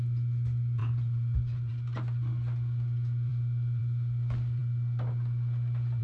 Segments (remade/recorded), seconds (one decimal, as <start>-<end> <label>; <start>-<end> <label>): 0.0-0.8 recorded; 0.8-1.7 remade; 1.7-6.0 recorded